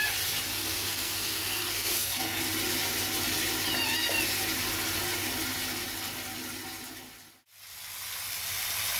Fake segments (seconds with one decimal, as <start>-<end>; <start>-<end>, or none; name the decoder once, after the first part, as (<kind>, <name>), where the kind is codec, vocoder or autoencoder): 0.5-2.4 (codec, SNAC)

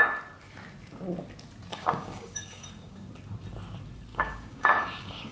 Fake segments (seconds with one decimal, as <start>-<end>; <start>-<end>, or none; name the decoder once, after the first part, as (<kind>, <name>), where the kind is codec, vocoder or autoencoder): 1.7-3.1 (codec, DAC); 4.1-5.3

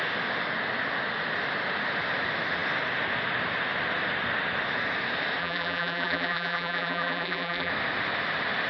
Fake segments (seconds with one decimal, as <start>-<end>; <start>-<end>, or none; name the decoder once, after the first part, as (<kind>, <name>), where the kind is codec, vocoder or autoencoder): 5.4-7.7 (vocoder, BigVGAN v2)

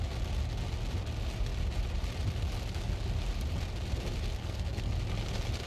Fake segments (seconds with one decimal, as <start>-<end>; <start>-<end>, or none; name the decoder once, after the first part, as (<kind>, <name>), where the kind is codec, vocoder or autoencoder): 4.4-4.9 (codec, SNAC)

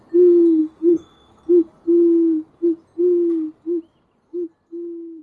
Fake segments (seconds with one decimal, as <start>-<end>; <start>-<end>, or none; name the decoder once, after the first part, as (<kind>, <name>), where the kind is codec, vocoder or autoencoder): 0.6-1.4 (codec, SNAC)

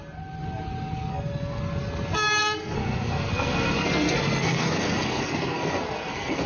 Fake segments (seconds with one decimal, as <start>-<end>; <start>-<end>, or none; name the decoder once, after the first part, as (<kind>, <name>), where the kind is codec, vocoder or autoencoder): 1.1-1.6 (codec, SNAC); 2.4-6.5